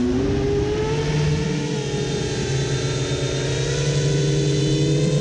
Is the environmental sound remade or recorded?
recorded